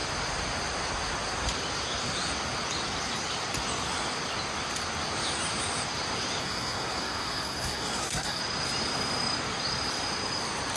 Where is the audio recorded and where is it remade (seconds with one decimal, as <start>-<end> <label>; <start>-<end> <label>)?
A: 0.0-6.4 recorded; 6.4-8.4 remade; 8.4-10.8 recorded